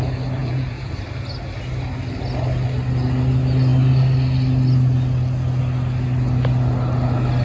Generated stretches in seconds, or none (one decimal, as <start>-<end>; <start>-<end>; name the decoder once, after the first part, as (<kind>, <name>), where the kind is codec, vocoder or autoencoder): 0.4-0.9 (vocoder, Vocos)